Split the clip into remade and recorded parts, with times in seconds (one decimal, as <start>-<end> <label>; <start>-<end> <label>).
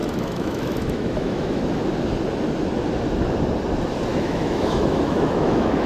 0.0-1.6 remade; 1.6-4.1 recorded; 4.1-5.9 remade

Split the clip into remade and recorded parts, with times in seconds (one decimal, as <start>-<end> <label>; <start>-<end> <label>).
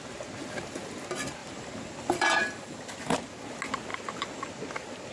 0.0-1.4 recorded; 1.4-3.0 remade; 3.0-3.9 recorded; 3.9-4.5 remade; 4.5-5.1 recorded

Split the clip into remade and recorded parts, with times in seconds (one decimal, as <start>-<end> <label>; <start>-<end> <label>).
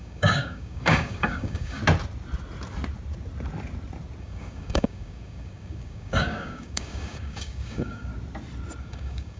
0.0-1.8 remade; 1.8-4.2 recorded; 4.2-8.1 remade; 8.1-8.8 recorded; 8.8-9.4 remade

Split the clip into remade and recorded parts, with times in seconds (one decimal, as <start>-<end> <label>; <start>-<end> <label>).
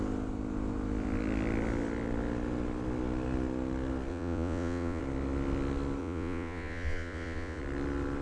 0.0-4.1 recorded; 4.1-5.0 remade; 5.0-6.0 recorded; 6.0-7.6 remade; 7.6-8.2 recorded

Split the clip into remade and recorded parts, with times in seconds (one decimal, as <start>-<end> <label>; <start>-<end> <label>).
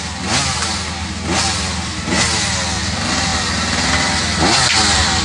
0.0-5.2 recorded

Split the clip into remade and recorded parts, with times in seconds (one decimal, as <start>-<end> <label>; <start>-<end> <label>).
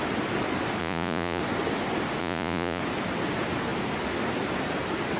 0.0-0.8 recorded; 0.8-1.4 remade; 1.4-2.2 recorded; 2.2-2.8 remade; 2.8-5.2 recorded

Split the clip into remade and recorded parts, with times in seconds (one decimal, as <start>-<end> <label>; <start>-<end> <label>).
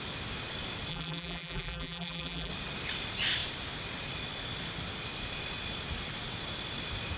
0.0-0.9 recorded; 0.9-2.5 remade; 2.5-7.2 recorded